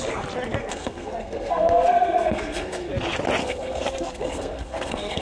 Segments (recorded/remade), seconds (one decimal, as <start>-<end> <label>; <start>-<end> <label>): 0.0-0.6 recorded; 0.6-2.9 remade; 2.9-3.4 recorded; 3.4-5.2 remade